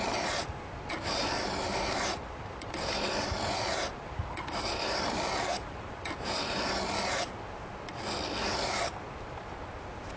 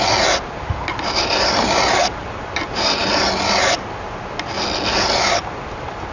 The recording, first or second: second